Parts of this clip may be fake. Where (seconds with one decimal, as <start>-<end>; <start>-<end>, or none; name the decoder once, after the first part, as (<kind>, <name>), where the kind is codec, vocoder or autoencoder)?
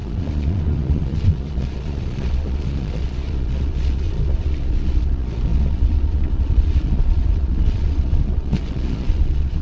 0.0-9.6 (vocoder, Vocos)